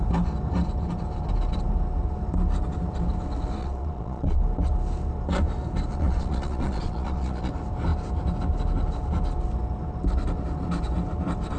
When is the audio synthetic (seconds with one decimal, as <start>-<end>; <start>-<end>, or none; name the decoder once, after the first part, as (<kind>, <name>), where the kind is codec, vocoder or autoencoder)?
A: 3.6-4.4 (vocoder, Vocos); 5.9-7.5